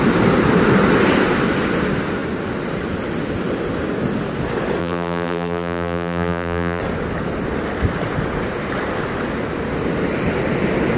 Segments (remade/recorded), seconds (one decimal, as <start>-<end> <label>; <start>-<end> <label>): 0.0-4.8 recorded; 4.8-6.8 remade; 6.8-11.0 recorded